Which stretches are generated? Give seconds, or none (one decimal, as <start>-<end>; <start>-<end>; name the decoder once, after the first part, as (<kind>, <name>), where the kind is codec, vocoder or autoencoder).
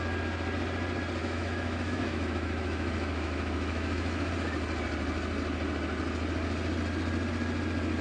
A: 1.2-4.3 (autoencoder, DAC-VAE)